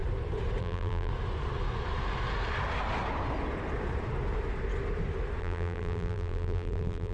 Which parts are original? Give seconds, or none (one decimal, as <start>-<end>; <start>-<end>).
0.0-0.6; 1.1-5.4